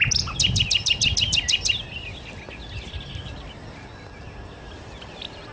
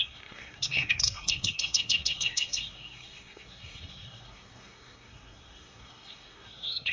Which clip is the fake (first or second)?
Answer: second